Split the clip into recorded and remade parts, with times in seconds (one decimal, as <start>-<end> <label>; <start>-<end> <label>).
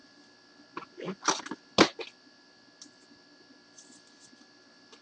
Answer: 0.0-5.0 recorded